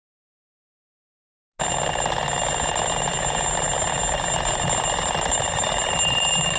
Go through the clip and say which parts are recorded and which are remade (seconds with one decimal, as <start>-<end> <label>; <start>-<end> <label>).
0.0-6.6 recorded